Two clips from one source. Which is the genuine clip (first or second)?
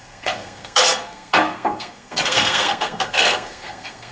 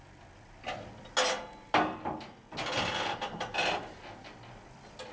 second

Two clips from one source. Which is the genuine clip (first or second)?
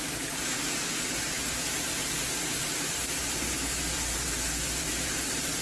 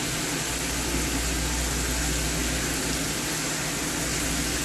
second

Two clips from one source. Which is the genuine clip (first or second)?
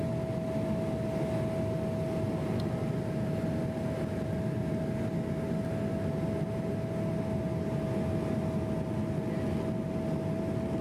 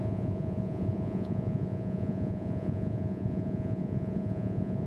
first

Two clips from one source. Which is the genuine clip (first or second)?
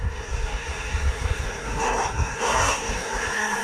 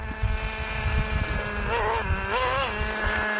second